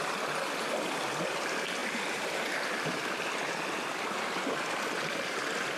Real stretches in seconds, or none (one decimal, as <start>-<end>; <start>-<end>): 0.0-1.8; 3.4-5.8